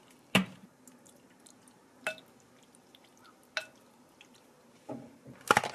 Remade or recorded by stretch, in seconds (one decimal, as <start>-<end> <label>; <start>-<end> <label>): 0.0-5.7 recorded